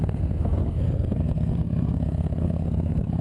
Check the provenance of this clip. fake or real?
fake